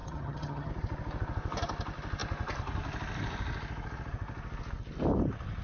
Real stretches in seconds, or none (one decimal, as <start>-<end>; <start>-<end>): 0.7-5.6